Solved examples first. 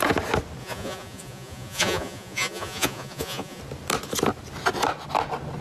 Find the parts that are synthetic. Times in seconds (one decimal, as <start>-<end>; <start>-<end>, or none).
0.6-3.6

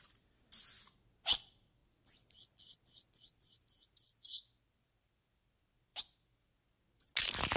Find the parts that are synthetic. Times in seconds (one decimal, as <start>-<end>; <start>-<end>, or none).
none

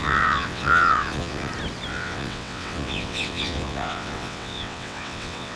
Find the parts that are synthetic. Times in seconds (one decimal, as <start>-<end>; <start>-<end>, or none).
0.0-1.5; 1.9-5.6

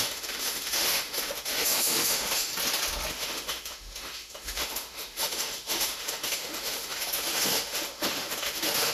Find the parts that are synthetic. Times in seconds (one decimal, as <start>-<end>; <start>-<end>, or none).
0.0-2.5; 3.1-8.9

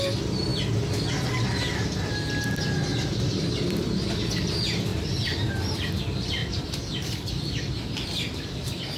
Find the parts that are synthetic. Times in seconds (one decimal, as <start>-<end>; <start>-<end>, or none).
2.9-4.1; 4.9-5.9; 6.4-9.0

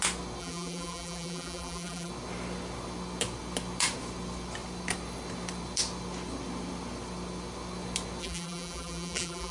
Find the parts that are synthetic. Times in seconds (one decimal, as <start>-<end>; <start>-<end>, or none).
0.4-2.1; 8.2-9.5

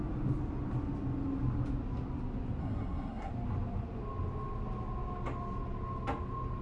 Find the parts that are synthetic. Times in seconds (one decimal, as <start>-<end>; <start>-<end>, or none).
2.6-3.3